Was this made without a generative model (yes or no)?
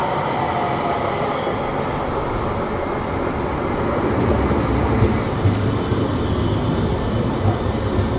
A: yes